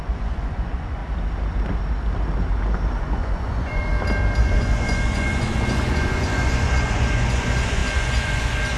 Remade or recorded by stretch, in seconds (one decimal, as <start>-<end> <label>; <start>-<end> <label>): 0.0-1.0 remade; 1.0-3.0 recorded; 3.0-3.9 remade; 3.9-4.4 recorded; 4.4-8.8 remade